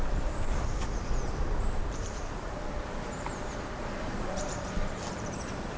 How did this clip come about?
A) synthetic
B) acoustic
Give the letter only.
A